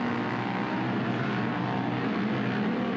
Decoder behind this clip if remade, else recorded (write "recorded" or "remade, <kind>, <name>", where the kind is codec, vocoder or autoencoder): recorded